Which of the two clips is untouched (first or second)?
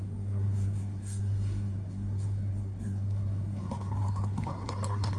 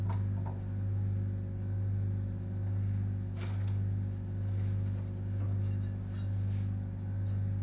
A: second